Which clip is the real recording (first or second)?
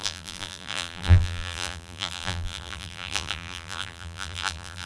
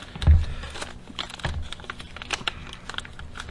second